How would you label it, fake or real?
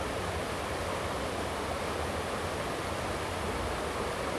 real